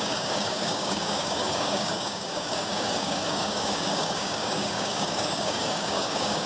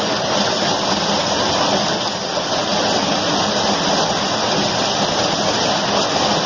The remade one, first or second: first